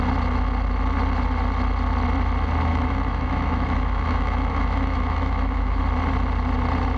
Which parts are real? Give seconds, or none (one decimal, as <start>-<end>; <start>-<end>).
0.0-2.7; 5.8-7.0